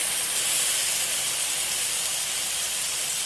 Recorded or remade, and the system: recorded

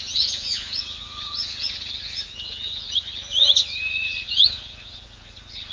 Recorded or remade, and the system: remade, vocoder, Vocos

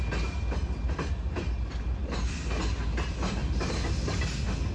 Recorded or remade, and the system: recorded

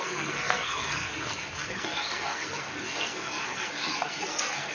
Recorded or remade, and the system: remade, codec, SNAC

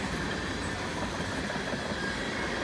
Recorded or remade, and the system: recorded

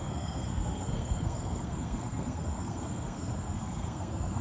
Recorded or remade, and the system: remade, codec, SNAC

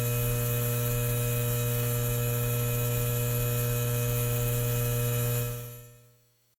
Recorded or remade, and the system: remade, autoencoder, DAC-VAE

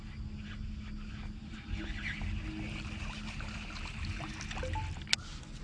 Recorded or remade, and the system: recorded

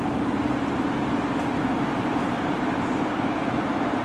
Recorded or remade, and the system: recorded